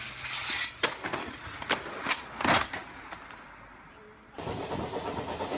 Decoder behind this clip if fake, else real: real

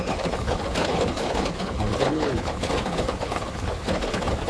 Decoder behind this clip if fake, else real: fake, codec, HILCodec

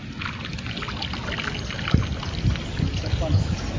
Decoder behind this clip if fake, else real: real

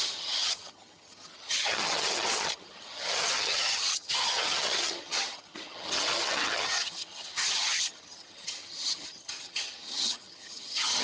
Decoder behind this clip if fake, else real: fake, vocoder, HiFi-GAN